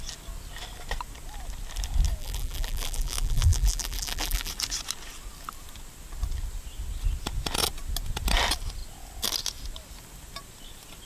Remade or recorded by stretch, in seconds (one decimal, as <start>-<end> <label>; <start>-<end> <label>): 0.0-2.2 recorded; 2.2-4.5 remade; 4.5-11.1 recorded